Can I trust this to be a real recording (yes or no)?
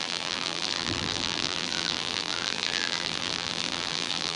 no